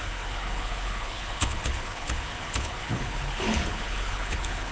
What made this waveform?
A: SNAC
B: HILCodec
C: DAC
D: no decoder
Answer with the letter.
B